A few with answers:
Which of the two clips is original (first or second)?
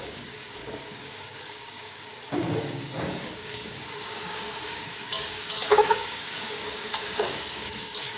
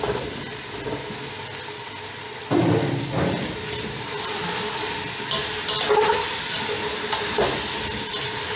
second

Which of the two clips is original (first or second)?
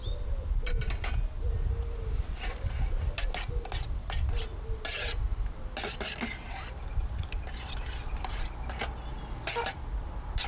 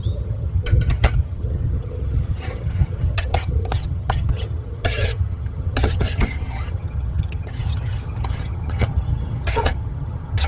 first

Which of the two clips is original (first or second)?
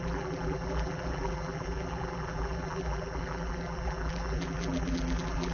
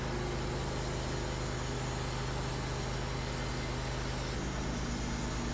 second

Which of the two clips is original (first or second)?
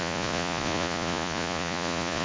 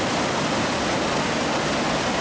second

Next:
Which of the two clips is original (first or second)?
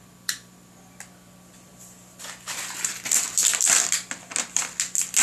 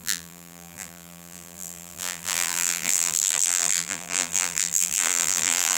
first